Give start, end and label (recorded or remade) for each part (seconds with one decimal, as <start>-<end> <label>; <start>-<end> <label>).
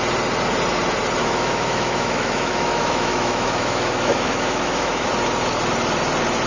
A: 0.0-1.2 recorded; 1.2-5.1 remade; 5.1-6.5 recorded